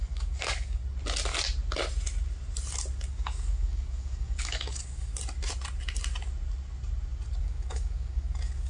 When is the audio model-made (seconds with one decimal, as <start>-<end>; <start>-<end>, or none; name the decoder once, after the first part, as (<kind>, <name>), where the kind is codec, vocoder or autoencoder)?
0.0-0.8 (codec, DAC); 3.1-5.1; 7.4-8.7